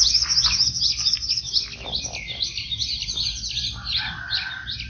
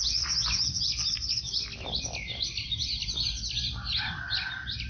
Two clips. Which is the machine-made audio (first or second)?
second